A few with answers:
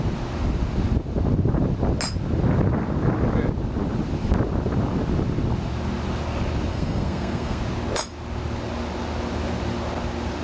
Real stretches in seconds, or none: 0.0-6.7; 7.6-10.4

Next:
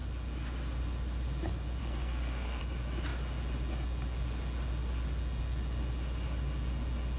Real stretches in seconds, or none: 0.0-1.8; 2.6-7.2

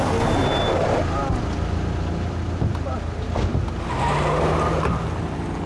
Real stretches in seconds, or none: 0.0-5.7

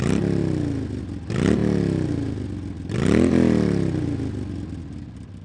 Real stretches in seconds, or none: 0.0-5.4

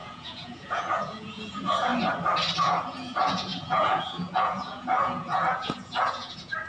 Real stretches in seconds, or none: 1.9-2.6

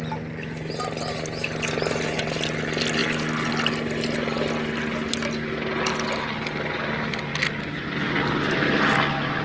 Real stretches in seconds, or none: 0.0-9.4

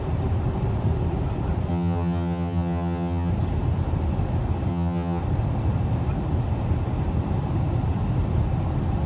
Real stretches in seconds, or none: 0.0-1.7; 3.3-4.7; 5.2-9.1